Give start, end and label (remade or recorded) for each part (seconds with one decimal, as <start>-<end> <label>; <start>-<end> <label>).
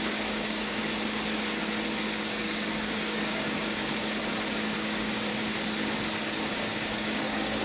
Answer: 0.0-0.8 remade; 0.8-2.2 recorded; 2.2-3.8 remade; 3.8-4.5 recorded; 4.5-5.3 remade; 5.3-6.5 recorded; 6.5-7.6 remade